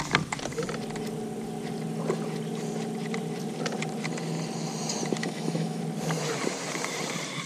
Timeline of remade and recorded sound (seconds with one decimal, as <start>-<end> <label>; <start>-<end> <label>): 0.0-5.2 recorded; 5.2-5.8 remade; 5.8-7.5 recorded